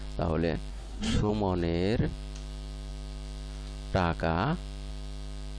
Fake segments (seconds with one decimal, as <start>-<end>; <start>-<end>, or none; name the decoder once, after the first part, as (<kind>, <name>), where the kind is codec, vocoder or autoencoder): 0.7-1.3 (codec, SNAC)